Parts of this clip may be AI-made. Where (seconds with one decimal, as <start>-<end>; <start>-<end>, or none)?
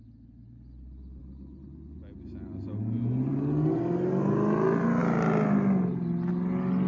none